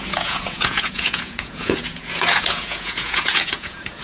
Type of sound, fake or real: fake